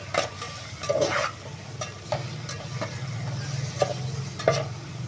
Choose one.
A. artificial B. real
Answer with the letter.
B